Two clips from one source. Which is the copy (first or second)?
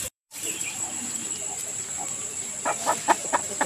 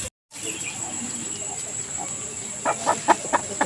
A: first